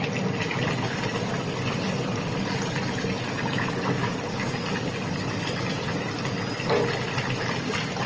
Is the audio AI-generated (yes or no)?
no